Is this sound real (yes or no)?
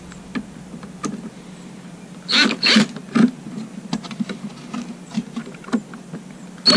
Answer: yes